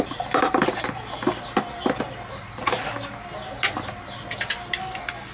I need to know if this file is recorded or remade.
recorded